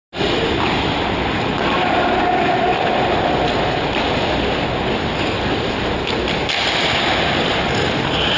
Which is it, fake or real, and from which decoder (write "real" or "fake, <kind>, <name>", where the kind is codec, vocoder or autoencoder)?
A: real